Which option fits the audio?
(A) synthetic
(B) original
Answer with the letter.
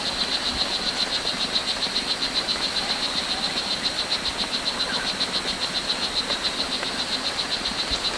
B